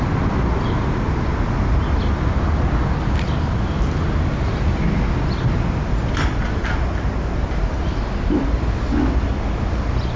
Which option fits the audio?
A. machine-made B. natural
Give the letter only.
B